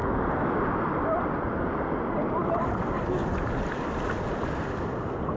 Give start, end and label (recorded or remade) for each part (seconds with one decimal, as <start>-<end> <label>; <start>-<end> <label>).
0.0-1.5 recorded; 1.5-5.4 remade